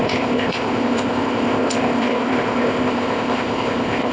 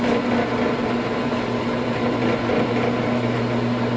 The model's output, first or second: first